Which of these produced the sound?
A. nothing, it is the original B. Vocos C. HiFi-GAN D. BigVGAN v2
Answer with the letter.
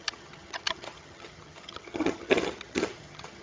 C